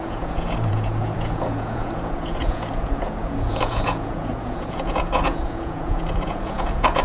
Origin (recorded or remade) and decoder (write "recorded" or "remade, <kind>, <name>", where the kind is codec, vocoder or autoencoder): remade, vocoder, Vocos